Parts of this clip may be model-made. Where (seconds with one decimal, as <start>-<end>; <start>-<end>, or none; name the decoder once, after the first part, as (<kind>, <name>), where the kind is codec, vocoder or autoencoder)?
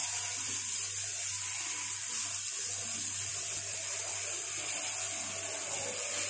0.0-0.7 (vocoder, BigVGAN v2); 3.3-4.9